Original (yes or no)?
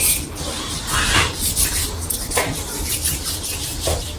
yes